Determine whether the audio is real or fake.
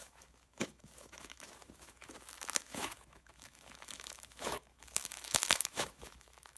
fake